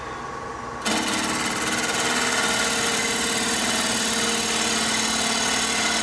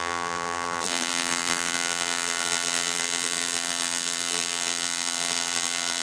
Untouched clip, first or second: first